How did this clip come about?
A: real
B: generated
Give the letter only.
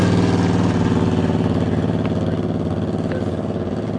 A